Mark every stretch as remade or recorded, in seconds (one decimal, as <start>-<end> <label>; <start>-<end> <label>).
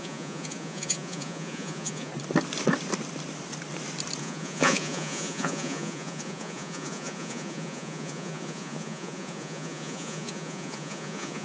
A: 0.0-2.1 remade; 2.1-4.2 recorded; 4.2-11.4 remade